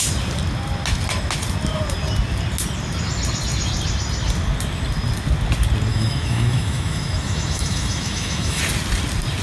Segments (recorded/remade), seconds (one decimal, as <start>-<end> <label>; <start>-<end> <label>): 0.0-5.9 recorded; 5.9-8.6 remade; 8.6-9.4 recorded

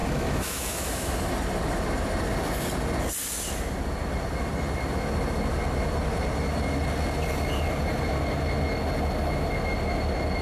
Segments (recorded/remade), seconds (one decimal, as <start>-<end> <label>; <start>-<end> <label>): 0.0-1.1 remade; 1.1-10.4 recorded

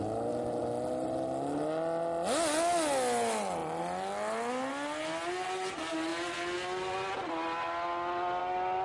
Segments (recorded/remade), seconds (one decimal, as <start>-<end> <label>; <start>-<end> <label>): 0.0-8.8 recorded

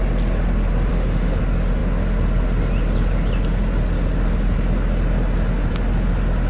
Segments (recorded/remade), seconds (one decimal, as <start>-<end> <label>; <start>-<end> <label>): 0.0-0.9 recorded; 0.9-1.4 remade; 1.4-6.5 recorded